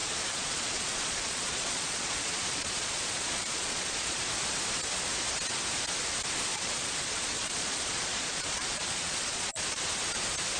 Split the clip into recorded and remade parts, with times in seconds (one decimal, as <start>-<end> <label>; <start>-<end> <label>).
0.0-4.2 remade; 4.2-6.5 recorded; 6.5-9.8 remade; 9.8-10.6 recorded